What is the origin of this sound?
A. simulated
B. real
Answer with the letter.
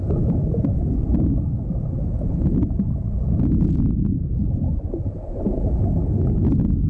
B